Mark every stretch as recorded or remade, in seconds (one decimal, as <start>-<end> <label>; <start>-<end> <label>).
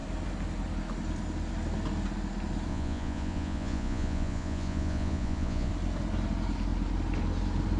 0.0-2.7 recorded; 2.7-5.7 remade; 5.7-7.8 recorded